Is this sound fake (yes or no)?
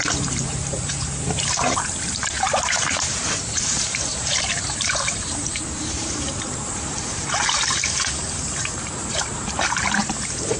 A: yes